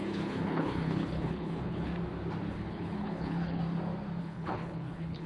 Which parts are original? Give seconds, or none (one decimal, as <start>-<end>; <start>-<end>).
1.9-2.5; 3.6-4.2